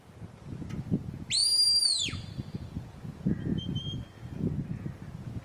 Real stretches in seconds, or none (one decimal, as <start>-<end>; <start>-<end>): 0.0-5.4